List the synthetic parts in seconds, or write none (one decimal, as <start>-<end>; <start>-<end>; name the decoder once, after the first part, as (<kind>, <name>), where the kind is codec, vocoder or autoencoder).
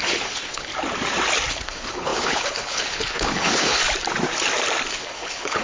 0.0-0.7 (codec, HILCodec); 1.5-3.8; 4.9-5.6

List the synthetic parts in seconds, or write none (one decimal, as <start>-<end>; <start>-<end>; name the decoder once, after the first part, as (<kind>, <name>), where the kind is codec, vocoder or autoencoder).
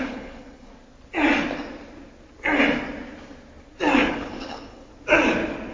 0.0-0.7 (codec, HILCodec); 4.1-4.9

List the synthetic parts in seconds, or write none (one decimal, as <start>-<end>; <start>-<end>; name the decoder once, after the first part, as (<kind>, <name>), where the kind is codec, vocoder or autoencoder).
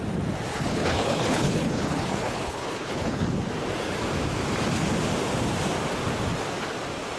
0.5-3.5 (codec, HILCodec)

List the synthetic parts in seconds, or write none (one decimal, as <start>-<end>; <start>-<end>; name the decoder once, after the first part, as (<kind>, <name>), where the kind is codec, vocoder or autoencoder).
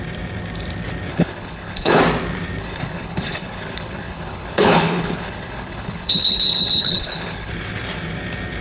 1.1-2.0 (codec, HILCodec); 2.6-7.5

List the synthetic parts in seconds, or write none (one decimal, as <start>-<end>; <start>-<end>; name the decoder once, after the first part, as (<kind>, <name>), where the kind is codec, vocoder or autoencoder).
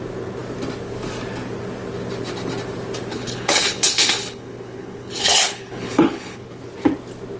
3.1-6.6 (codec, HILCodec)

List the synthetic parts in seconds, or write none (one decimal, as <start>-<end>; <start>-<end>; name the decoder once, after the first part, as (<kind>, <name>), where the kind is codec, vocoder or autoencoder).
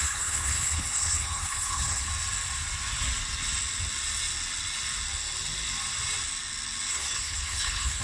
0.0-2.1 (codec, HILCodec); 6.9-8.0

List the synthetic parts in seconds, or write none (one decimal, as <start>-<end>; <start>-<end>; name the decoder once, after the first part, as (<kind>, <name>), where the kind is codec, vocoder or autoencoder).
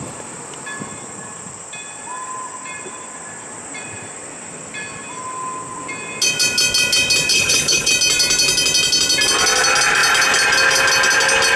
7.3-7.9 (codec, HILCodec)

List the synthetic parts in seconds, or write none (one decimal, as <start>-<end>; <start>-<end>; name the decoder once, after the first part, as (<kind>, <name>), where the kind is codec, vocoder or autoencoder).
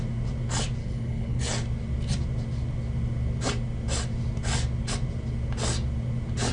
0.8-1.4 (codec, HILCodec)